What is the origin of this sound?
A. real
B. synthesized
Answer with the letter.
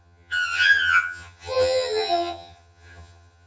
B